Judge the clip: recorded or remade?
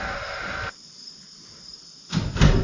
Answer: recorded